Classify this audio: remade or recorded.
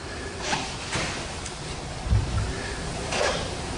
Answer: remade